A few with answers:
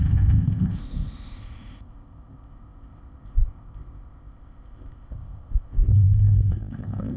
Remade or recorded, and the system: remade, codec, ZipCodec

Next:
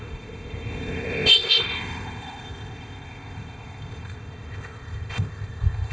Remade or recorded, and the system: remade, codec, ZipCodec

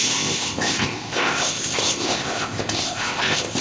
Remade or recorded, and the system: remade, codec, ZipCodec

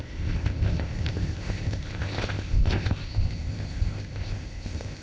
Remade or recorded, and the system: remade, codec, ZipCodec